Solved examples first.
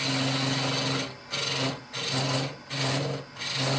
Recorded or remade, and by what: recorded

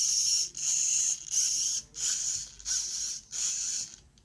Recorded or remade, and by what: recorded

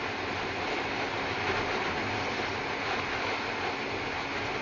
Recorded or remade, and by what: recorded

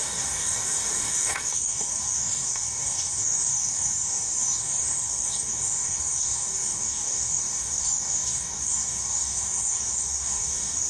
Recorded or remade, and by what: remade, codec, DAC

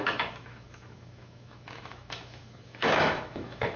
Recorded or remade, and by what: remade, autoencoder, DAC-VAE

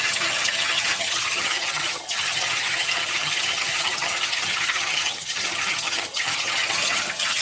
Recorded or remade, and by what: remade, vocoder, HiFi-GAN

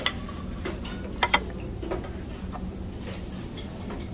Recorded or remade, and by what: recorded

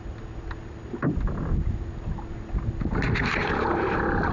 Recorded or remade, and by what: recorded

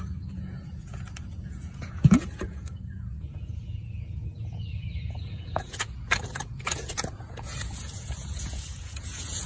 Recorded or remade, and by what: remade, vocoder, Vocos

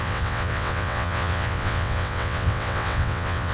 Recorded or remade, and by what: remade, vocoder, WaveNeXt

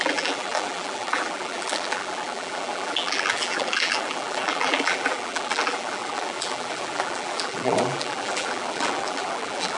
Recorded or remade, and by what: remade, vocoder, BigVGAN v2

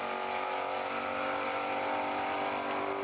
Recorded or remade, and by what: recorded